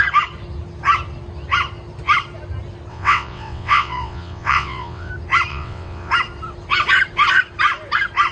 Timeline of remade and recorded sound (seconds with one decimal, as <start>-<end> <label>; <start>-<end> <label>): 0.0-2.9 recorded; 2.9-5.1 remade; 5.1-5.5 recorded; 5.5-6.1 remade; 6.1-8.3 recorded